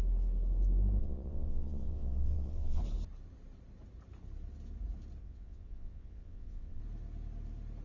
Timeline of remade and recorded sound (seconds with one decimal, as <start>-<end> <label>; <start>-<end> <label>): 0.0-1.0 recorded; 1.0-2.8 remade; 2.8-5.2 recorded; 5.2-6.8 remade; 6.8-7.8 recorded